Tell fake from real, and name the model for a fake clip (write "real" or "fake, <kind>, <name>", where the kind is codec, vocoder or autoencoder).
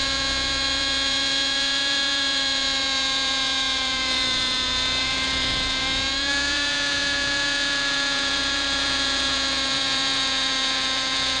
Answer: fake, vocoder, Vocos